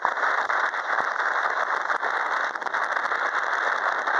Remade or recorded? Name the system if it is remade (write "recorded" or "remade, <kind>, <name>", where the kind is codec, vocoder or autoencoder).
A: recorded